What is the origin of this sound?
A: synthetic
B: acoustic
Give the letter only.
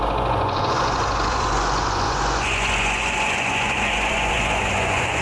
A